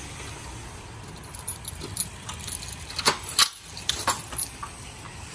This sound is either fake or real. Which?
real